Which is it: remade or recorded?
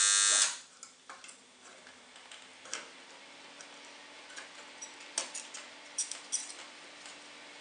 recorded